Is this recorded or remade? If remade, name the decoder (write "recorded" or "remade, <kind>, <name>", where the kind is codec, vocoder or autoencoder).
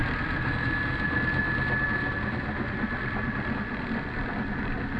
recorded